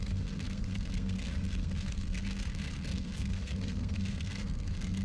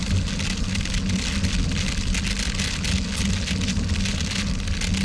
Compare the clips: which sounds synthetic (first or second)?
first